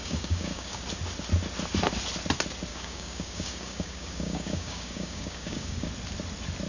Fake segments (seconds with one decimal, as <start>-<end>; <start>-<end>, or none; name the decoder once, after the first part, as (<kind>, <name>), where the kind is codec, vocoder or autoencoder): 0.0-0.8 (codec, DAC); 2.7-5.9